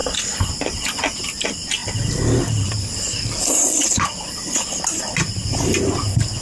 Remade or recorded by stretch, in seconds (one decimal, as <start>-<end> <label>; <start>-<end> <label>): 0.0-0.6 remade; 0.6-1.8 recorded; 1.8-3.4 remade; 3.4-4.4 recorded; 4.4-5.2 remade; 5.2-6.4 recorded

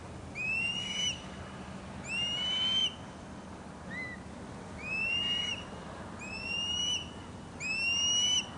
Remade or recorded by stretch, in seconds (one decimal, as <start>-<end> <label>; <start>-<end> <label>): 0.0-8.6 recorded

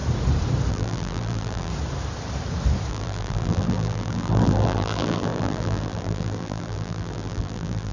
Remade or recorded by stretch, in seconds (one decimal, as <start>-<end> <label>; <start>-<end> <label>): 0.0-0.7 recorded; 0.7-1.7 remade; 1.7-2.9 recorded; 2.9-7.9 remade

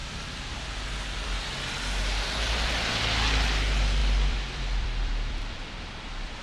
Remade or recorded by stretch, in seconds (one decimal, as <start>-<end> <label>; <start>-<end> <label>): 0.0-0.5 remade; 0.5-4.0 recorded; 4.0-6.4 remade